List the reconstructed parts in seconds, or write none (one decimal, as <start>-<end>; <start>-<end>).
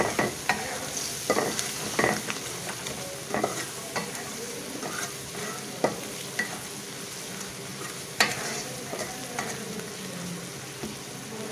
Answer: 4.0-4.6; 7.7-8.9